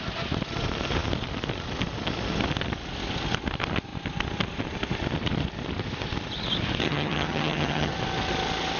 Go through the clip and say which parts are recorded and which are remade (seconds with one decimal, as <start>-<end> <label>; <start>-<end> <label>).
0.0-6.8 recorded; 6.8-7.9 remade; 7.9-8.8 recorded